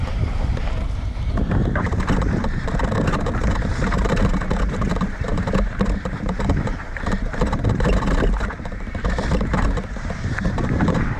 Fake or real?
fake